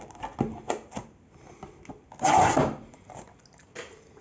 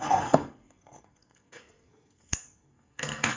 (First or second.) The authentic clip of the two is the first